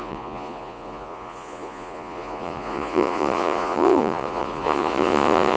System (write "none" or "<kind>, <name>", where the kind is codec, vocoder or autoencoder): vocoder, Vocos